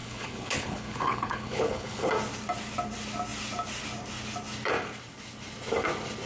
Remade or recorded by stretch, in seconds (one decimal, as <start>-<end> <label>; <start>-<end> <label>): 0.0-2.1 remade; 2.1-6.3 recorded